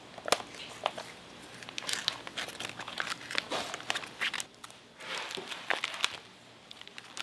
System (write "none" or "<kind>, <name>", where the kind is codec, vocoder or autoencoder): none